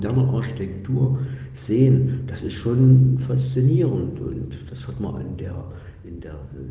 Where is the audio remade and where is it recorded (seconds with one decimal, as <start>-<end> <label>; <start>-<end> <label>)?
0.0-6.7 recorded